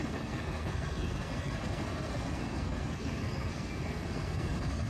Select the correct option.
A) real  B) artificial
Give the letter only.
B